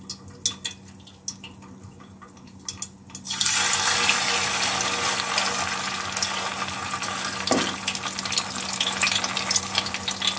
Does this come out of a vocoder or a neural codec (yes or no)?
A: no